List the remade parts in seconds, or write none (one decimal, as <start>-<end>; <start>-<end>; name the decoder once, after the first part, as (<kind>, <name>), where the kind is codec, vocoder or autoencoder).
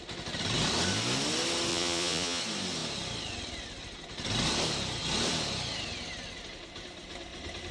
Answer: 1.7-2.4 (vocoder, Vocos)